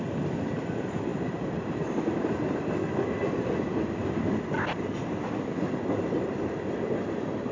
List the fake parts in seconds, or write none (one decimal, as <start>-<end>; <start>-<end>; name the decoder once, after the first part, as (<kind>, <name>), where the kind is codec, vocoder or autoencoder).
0.0-1.1 (vocoder, BigVGAN v2); 1.7-7.5